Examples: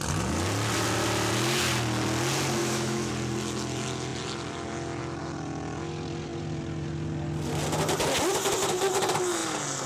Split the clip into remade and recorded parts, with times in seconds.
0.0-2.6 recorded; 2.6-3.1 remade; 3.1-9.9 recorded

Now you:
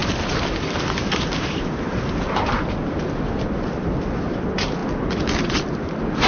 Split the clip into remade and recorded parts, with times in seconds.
0.0-6.3 recorded

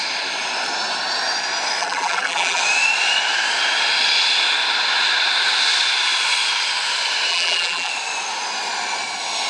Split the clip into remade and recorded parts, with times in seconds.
0.0-1.8 recorded; 1.8-2.6 remade; 2.6-7.3 recorded; 7.3-7.9 remade; 7.9-9.5 recorded

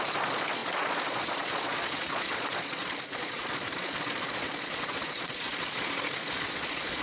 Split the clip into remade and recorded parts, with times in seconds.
0.0-7.0 remade

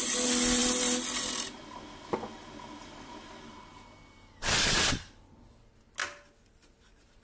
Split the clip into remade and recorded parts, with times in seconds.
0.0-7.2 recorded

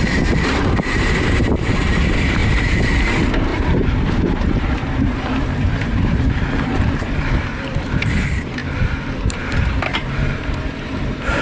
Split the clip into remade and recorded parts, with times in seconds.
0.0-2.4 remade; 2.4-3.0 recorded; 3.0-8.6 remade; 8.6-9.2 recorded; 9.2-11.4 remade

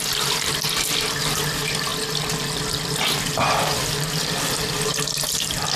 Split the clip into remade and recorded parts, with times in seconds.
0.0-5.8 recorded

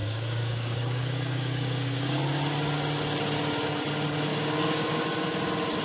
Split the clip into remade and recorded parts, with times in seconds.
0.0-2.2 remade; 2.2-4.3 recorded; 4.3-5.0 remade; 5.0-5.8 recorded